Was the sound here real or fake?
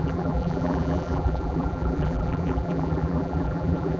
fake